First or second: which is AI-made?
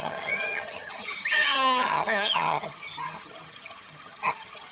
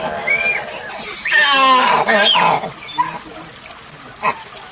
first